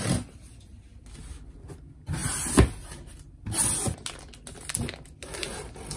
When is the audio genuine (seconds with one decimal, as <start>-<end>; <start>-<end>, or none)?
0.0-6.0